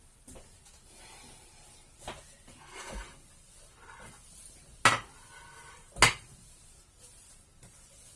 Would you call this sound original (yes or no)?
yes